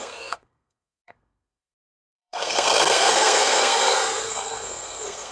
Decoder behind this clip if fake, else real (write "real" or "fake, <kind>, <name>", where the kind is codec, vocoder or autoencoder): fake, codec, SNAC